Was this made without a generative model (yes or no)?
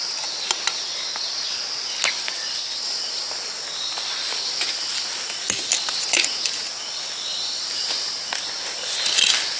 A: yes